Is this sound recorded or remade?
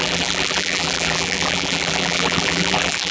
remade